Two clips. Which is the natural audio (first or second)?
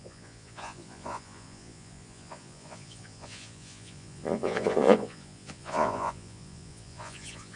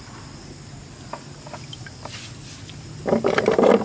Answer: second